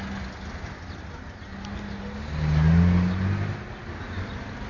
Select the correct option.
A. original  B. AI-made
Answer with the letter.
A